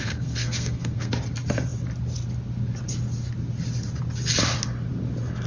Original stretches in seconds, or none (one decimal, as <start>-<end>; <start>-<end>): 1.1-5.5